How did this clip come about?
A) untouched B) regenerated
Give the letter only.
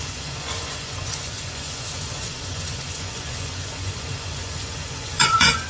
B